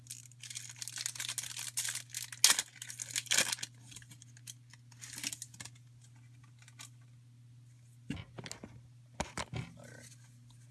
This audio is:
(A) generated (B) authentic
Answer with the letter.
B